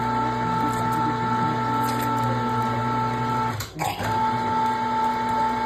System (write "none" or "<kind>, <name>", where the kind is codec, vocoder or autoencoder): none